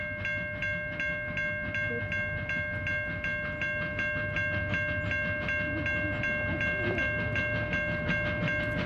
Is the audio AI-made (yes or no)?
no